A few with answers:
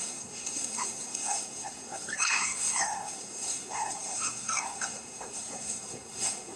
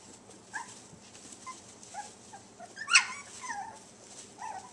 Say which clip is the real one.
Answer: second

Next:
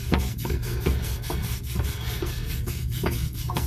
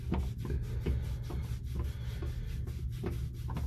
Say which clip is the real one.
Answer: second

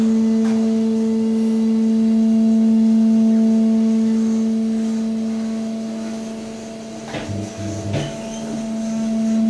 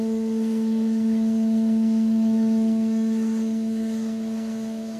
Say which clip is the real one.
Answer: first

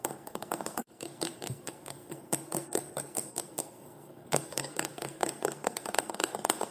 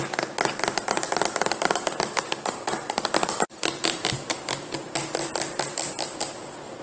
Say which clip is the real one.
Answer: second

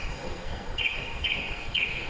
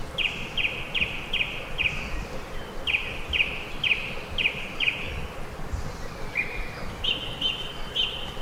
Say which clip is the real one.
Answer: second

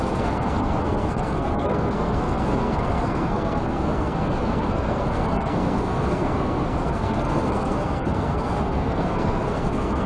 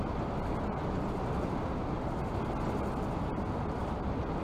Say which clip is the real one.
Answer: second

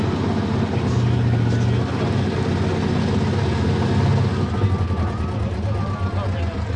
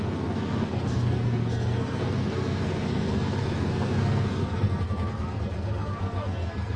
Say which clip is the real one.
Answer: first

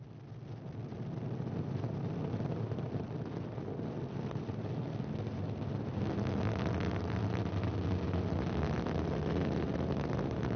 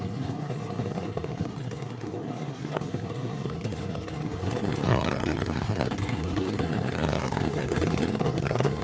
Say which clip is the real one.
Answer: first